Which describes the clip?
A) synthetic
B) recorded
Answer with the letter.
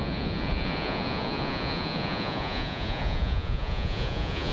A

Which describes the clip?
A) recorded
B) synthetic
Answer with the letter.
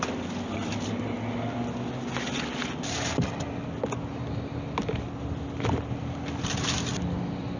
A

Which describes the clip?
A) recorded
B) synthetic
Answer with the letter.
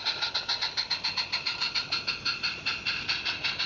A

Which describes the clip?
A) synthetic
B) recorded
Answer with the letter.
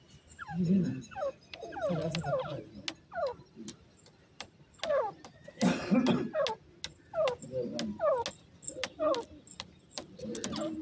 B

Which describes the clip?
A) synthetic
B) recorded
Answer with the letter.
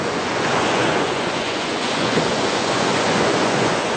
A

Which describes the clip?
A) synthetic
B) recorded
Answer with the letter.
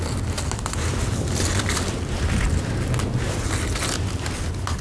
B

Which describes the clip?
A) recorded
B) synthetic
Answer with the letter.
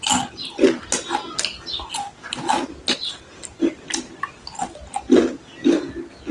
A